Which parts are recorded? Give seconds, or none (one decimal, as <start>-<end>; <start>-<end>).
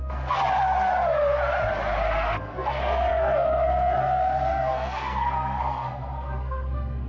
0.4-2.4